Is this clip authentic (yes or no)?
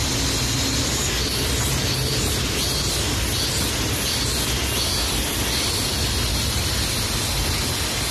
yes